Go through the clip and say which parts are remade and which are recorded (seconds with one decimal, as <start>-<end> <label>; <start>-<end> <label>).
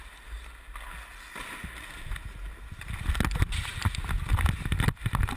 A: 0.0-5.4 recorded